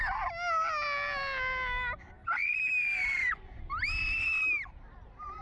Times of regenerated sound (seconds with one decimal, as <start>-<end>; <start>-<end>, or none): 2.2-5.4